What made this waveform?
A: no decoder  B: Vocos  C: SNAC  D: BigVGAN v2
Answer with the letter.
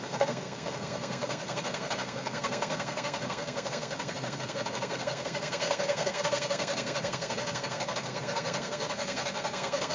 C